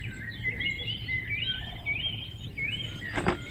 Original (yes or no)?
yes